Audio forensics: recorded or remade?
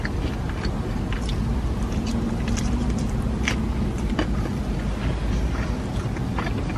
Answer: recorded